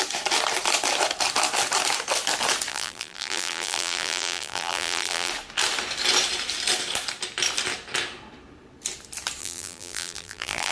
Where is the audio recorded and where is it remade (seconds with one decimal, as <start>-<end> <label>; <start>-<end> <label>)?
0.0-2.7 recorded; 2.7-5.3 remade; 5.3-9.4 recorded; 9.4-10.7 remade